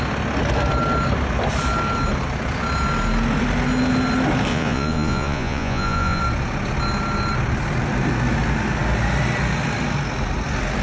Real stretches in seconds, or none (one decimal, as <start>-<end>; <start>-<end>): 0.0-4.5; 6.2-10.8